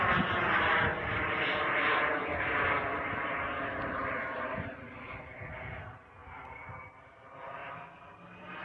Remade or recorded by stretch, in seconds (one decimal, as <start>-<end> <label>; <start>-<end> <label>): 0.0-0.9 recorded; 0.9-1.4 remade; 1.4-6.2 recorded; 6.2-7.1 remade; 7.1-7.6 recorded; 7.6-8.2 remade; 8.2-8.6 recorded